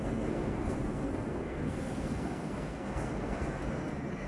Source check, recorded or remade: remade